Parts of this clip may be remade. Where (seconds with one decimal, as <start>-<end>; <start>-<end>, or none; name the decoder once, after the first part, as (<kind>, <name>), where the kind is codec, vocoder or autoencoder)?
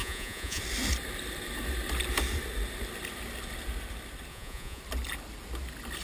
0.0-0.6 (vocoder, Vocos); 4.3-4.8